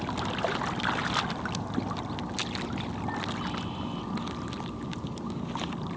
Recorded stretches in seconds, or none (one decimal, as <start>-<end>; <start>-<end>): 0.0-6.0